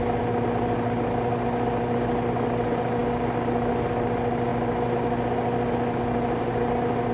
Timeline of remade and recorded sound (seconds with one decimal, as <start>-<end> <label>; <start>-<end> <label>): 0.0-7.1 recorded